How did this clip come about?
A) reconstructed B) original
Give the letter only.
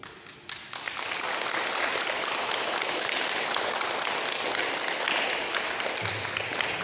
B